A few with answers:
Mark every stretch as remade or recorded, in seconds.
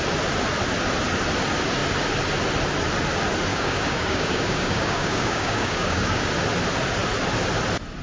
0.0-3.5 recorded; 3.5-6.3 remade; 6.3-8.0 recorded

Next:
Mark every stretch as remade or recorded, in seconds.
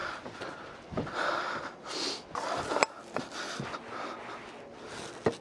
0.0-5.4 recorded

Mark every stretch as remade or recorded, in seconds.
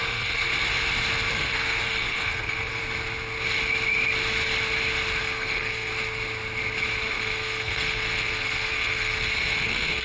0.0-0.5 remade; 0.5-1.3 recorded; 1.3-2.8 remade; 2.8-5.2 recorded; 5.2-5.9 remade; 5.9-7.1 recorded; 7.1-10.0 remade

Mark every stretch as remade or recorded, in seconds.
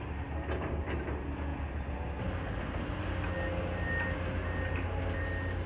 0.0-5.7 recorded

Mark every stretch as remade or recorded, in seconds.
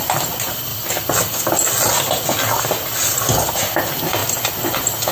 0.0-5.1 recorded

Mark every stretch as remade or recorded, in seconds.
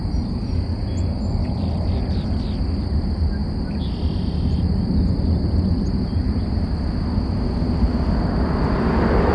0.0-9.3 recorded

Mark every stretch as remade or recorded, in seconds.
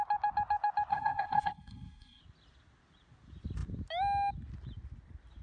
0.0-0.9 recorded; 0.9-2.2 remade; 2.2-5.4 recorded